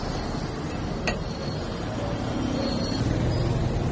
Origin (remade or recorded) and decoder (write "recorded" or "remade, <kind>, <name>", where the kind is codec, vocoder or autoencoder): recorded